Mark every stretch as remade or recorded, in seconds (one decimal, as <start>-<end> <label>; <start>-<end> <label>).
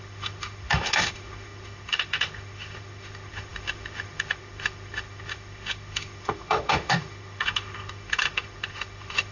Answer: 0.0-9.3 remade